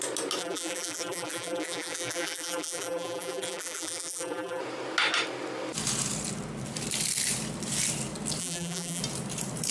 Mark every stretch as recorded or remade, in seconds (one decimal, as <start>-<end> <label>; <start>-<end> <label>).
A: 0.0-0.4 recorded; 0.4-4.6 remade; 4.6-8.4 recorded; 8.4-9.0 remade; 9.0-9.7 recorded